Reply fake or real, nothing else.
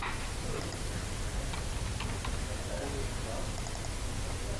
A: real